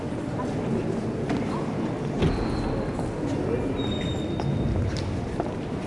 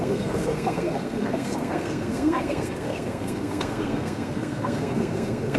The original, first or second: first